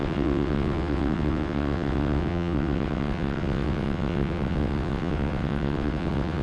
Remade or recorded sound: remade